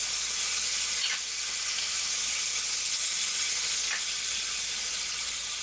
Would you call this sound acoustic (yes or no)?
yes